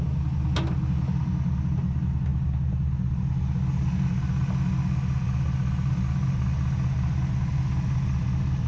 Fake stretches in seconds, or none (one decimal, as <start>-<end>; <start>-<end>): none